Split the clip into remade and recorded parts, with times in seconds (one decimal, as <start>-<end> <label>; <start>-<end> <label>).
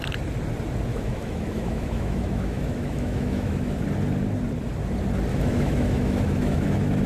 0.0-0.9 recorded; 0.9-3.8 remade; 3.8-5.3 recorded; 5.3-7.1 remade